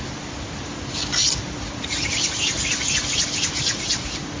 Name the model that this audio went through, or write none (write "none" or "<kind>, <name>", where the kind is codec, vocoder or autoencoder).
none